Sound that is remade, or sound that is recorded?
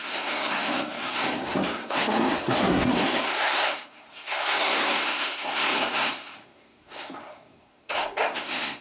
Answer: remade